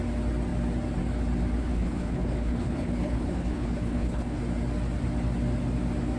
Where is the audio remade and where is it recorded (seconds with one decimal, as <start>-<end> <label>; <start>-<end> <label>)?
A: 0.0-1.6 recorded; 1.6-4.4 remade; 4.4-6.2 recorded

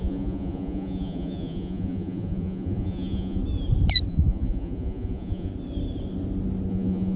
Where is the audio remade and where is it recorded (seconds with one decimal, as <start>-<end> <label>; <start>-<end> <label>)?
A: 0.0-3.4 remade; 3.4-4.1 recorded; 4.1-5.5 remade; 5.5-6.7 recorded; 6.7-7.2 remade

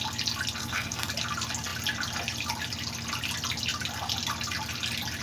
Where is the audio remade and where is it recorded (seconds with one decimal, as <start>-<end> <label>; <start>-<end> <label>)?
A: 0.0-0.6 recorded; 0.6-1.1 remade; 1.1-5.2 recorded

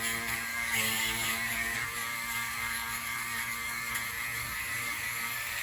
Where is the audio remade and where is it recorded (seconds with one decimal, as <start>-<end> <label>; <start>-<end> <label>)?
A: 0.0-0.5 recorded; 0.5-3.9 remade; 3.9-4.4 recorded; 4.4-5.6 remade